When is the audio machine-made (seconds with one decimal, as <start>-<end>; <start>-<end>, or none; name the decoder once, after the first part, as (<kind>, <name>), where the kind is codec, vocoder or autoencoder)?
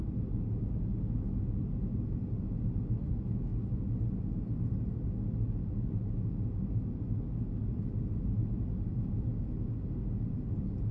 none